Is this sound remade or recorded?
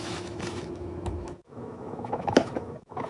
remade